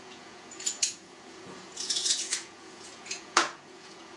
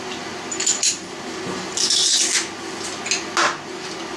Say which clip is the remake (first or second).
first